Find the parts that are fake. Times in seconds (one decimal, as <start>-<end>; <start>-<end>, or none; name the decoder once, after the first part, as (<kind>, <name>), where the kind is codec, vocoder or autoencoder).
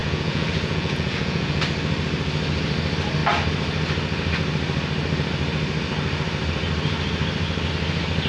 0.0-1.6 (vocoder, Vocos)